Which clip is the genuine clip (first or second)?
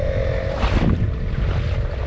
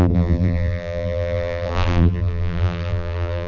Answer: first